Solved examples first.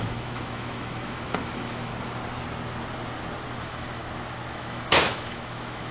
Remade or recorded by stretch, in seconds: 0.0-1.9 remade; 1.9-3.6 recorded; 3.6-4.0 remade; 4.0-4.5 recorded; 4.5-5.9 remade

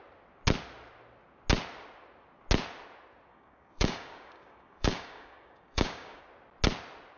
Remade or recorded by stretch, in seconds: 0.0-3.3 recorded; 3.3-6.2 remade; 6.2-7.2 recorded

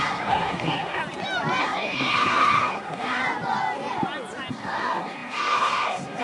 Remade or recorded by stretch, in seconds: 0.0-1.0 remade; 1.0-1.6 recorded; 1.6-3.2 remade; 3.2-4.5 recorded; 4.5-6.2 remade

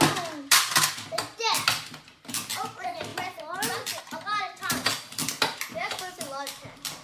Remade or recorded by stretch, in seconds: 0.0-5.8 recorded; 5.8-6.5 remade; 6.5-7.0 recorded

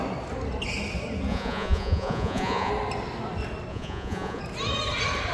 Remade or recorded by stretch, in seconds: 0.0-1.3 recorded; 1.3-2.7 remade; 2.7-3.7 recorded; 3.7-4.4 remade; 4.4-5.3 recorded

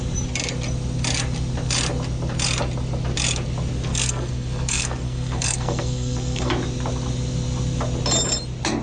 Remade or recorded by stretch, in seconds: 0.0-3.9 recorded; 3.9-6.5 remade; 6.5-8.8 recorded